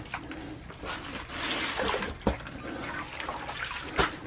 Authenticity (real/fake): real